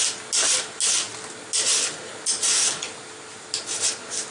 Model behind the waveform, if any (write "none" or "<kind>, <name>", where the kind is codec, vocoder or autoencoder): none